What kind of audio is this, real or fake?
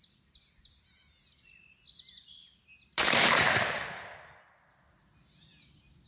real